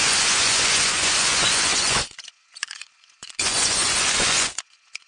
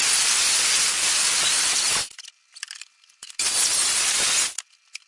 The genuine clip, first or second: second